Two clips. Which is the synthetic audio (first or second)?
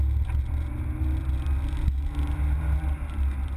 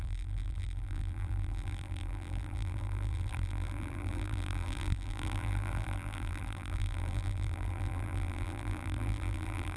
second